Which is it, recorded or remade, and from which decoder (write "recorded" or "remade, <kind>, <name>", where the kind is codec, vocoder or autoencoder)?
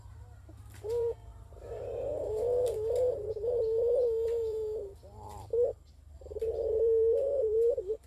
remade, vocoder, BigVGAN v2